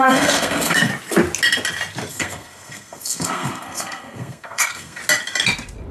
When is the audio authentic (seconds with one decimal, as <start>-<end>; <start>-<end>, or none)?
0.9-2.1; 5.0-5.9